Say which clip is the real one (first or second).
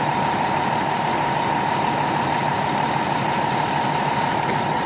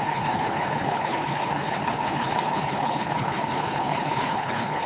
first